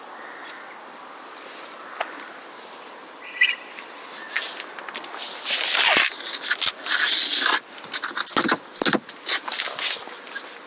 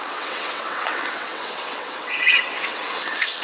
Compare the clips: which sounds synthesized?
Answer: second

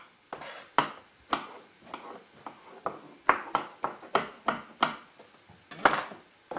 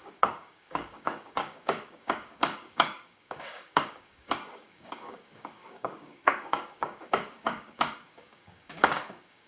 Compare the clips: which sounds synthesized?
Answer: second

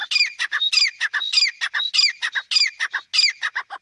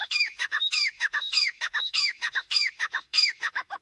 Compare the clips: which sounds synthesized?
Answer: second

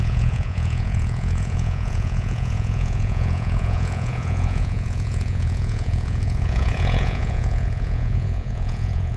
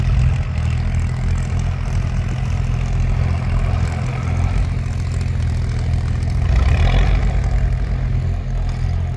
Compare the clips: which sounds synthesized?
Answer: first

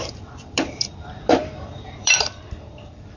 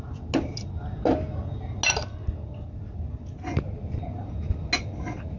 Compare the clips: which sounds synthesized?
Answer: first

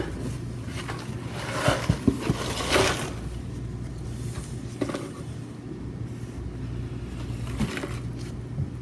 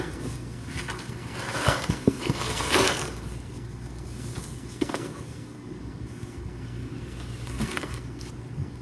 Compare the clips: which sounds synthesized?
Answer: second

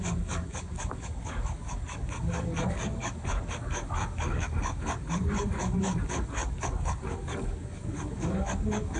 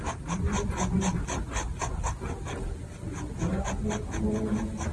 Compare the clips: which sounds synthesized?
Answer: first